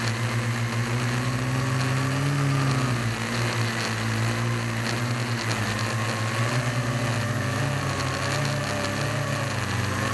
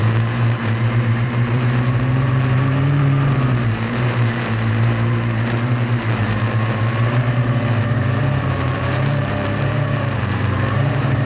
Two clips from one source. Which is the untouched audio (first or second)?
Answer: first